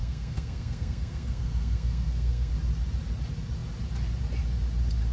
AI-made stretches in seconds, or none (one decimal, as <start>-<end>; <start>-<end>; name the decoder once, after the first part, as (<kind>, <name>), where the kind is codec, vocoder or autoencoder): 0.0-2.5 (codec, SNAC)